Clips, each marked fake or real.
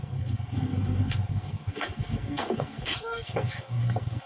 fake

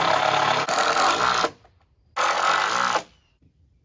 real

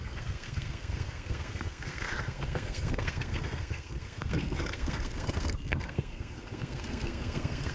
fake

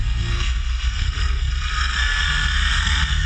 fake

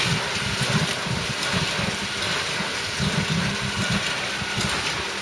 real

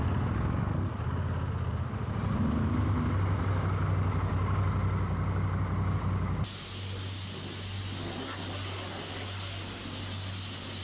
real